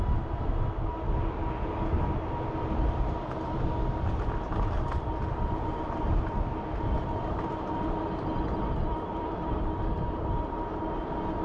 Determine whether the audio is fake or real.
real